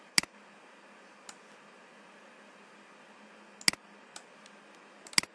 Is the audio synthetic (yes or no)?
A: no